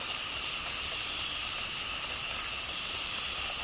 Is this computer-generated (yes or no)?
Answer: no